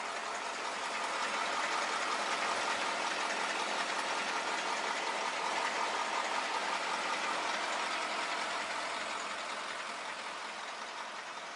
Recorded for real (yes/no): yes